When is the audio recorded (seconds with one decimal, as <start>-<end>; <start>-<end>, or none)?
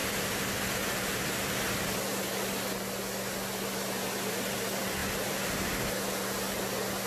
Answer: 0.0-7.1